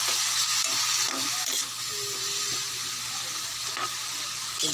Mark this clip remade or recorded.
recorded